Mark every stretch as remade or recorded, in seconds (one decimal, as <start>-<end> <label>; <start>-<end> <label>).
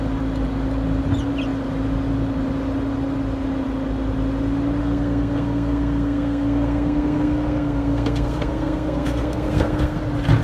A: 0.0-4.8 recorded; 4.8-10.0 remade; 10.0-10.4 recorded